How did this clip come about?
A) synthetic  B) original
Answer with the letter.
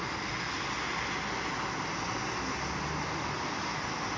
B